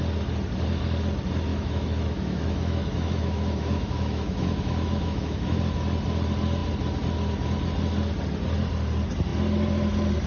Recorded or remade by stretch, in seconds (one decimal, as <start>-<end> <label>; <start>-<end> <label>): 0.0-1.5 recorded; 1.5-5.6 remade; 5.6-10.3 recorded